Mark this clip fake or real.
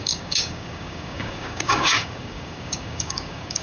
fake